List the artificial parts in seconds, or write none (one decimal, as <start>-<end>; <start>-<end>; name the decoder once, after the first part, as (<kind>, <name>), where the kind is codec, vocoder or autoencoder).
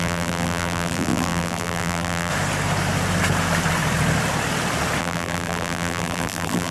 0.0-2.3 (vocoder, BigVGAN v2); 5.0-6.7